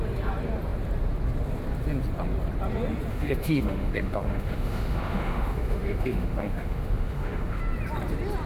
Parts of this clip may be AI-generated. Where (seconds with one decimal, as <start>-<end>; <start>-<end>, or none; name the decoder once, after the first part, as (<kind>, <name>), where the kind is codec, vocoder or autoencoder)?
3.1-7.6 (autoencoder, DAC-VAE)